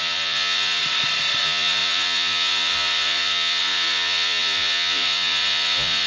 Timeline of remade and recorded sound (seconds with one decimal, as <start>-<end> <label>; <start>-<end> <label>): 0.0-0.8 remade; 0.8-1.4 recorded; 1.4-6.1 remade